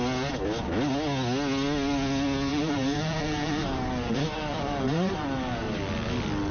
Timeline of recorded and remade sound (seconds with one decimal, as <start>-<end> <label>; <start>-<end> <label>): 0.0-2.5 recorded; 2.5-5.8 remade; 5.8-6.5 recorded